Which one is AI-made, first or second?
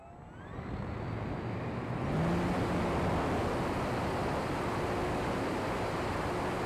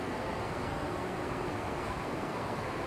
second